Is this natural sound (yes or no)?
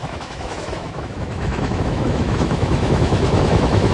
no